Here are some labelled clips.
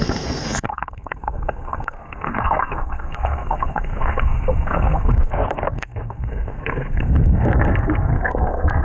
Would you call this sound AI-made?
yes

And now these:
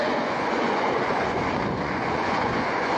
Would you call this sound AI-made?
yes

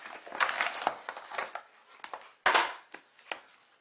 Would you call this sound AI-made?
no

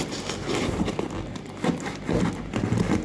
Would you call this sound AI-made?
no